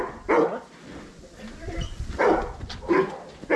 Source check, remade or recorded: recorded